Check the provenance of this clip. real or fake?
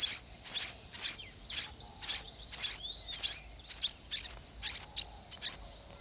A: real